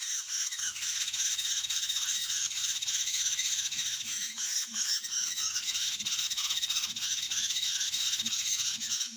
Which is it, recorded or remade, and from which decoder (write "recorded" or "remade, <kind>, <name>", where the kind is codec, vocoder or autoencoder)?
remade, autoencoder, DAC-VAE